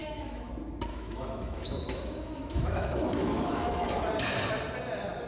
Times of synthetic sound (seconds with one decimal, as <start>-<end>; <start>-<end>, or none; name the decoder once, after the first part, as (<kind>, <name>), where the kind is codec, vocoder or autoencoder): 0.0-0.5 (autoencoder, DAC-VAE); 0.9-4.0